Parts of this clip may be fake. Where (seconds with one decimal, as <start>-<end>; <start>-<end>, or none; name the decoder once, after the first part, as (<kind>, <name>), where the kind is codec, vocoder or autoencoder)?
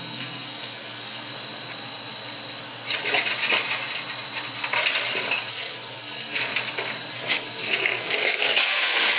0.0-1.3 (codec, SNAC); 5.5-6.5; 7.1-9.2